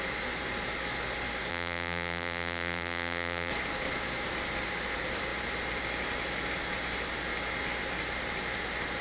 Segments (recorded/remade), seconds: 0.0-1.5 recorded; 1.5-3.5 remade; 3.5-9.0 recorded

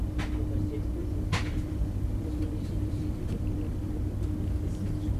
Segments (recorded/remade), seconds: 0.0-1.0 recorded; 1.0-3.9 remade; 3.9-5.2 recorded